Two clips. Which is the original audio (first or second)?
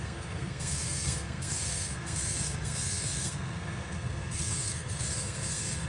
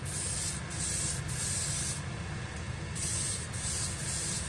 second